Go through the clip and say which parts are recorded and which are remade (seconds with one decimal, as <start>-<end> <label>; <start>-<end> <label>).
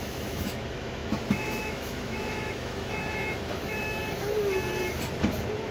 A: 0.0-4.0 remade; 4.0-5.7 recorded